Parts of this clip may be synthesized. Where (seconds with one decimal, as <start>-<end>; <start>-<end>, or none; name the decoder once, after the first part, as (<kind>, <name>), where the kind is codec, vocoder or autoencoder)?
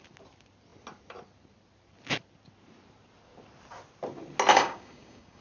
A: 4.5-5.4 (codec, DAC)